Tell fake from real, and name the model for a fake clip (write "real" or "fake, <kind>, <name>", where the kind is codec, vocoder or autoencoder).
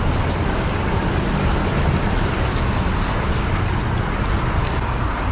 real